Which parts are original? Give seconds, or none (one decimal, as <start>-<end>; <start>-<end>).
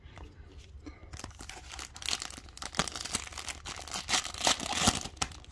0.0-5.5